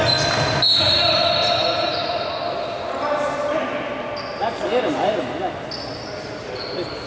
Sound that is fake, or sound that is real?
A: real